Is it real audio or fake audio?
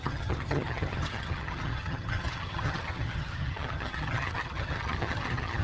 fake